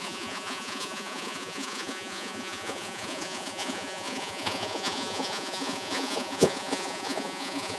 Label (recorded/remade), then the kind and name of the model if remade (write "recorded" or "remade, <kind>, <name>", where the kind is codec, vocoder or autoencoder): remade, vocoder, Vocos